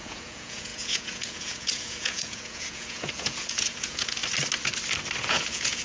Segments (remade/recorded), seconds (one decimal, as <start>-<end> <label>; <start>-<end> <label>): 0.0-4.2 remade; 4.2-5.2 recorded; 5.2-5.8 remade